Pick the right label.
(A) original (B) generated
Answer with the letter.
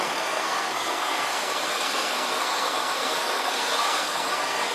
B